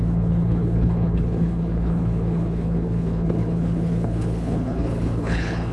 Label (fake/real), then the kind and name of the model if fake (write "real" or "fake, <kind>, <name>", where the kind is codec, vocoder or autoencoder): fake, codec, HILCodec